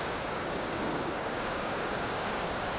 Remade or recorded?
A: remade